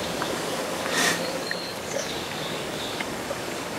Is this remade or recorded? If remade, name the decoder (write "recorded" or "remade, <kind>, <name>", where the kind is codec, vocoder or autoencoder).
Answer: remade, codec, DAC